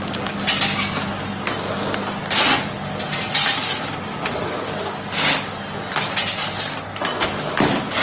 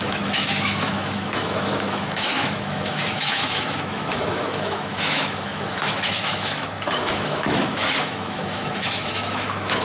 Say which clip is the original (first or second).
first